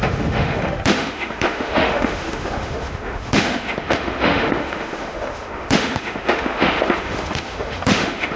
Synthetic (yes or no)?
yes